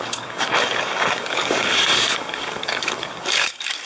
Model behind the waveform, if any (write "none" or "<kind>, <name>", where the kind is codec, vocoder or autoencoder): codec, DAC